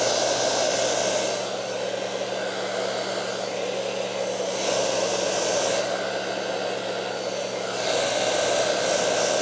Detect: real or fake real